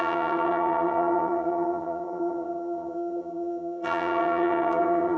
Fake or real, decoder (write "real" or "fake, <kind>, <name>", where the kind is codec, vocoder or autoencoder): fake, vocoder, HiFi-GAN